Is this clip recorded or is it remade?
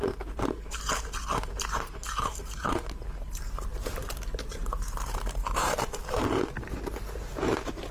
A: remade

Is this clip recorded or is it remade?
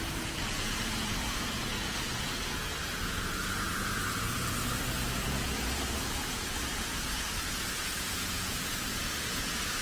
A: remade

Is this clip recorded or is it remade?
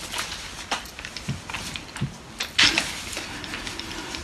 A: recorded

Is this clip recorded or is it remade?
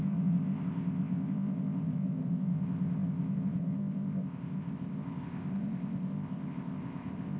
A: remade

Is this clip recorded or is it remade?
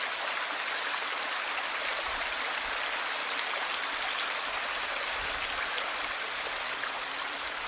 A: recorded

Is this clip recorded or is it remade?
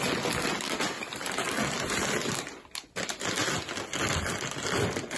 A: recorded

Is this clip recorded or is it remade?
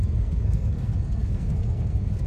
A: remade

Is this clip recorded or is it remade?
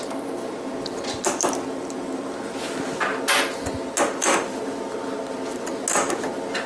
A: recorded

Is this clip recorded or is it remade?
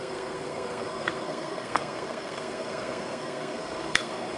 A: remade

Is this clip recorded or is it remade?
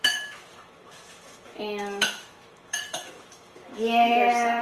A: remade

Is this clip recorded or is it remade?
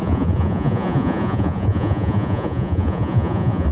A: remade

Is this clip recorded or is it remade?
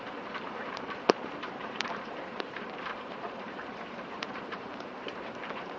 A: remade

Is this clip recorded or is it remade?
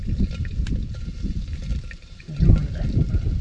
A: recorded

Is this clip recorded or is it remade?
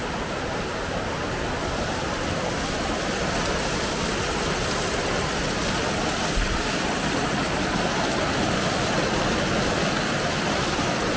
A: recorded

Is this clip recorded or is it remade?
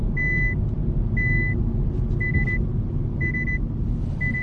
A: recorded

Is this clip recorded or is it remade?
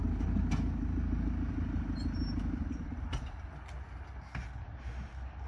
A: recorded